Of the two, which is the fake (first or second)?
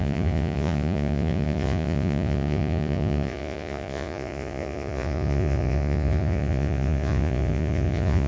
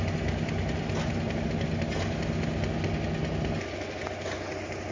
first